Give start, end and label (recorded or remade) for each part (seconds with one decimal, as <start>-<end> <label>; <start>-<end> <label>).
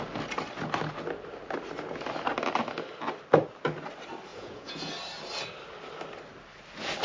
0.0-4.3 recorded; 4.3-4.9 remade; 4.9-7.0 recorded